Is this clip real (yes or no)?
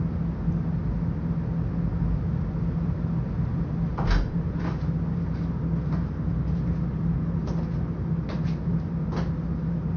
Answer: yes